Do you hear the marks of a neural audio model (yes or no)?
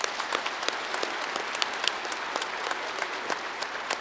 no